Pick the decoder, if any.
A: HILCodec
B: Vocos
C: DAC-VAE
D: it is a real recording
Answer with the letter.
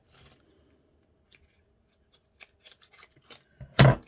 D